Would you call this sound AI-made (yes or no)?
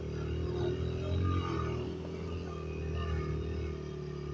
no